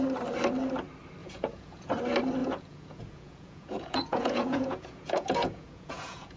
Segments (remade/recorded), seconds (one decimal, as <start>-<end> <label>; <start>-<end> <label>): 0.0-1.2 recorded; 1.2-1.9 remade; 1.9-2.4 recorded; 2.4-6.4 remade